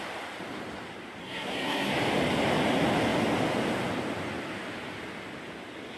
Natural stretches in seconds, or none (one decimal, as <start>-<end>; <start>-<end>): 0.0-1.2; 1.9-6.0